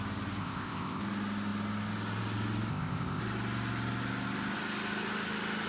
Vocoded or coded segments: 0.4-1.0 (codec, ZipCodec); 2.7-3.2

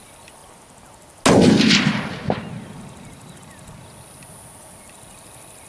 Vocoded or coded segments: none

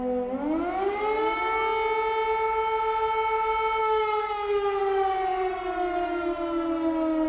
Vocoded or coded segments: 3.8-4.8 (autoencoder, DAC-VAE)

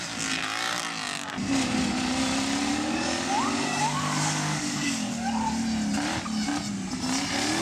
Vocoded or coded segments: 2.7-5.6 (codec, DAC)